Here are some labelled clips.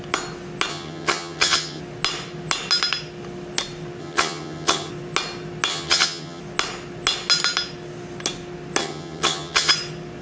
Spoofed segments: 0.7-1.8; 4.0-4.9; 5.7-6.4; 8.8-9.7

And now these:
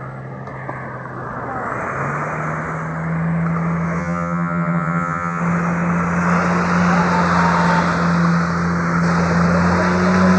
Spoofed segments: 4.0-5.4

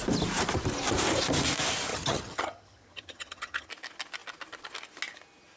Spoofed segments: 1.9-3.7

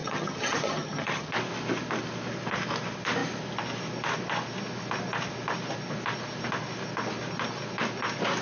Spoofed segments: 0.0-1.3

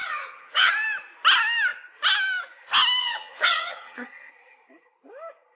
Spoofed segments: 0.0-0.7; 3.0-4.3

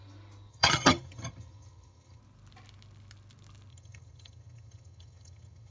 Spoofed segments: 0.5-2.2; 3.7-5.7

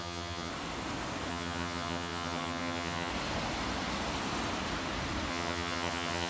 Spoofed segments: 0.0-0.5; 1.3-3.1; 5.3-6.3